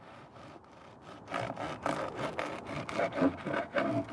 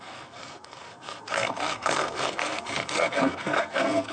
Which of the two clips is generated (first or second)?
second